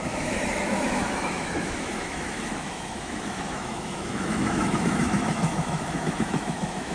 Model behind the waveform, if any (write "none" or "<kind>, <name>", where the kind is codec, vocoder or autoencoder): autoencoder, DAC-VAE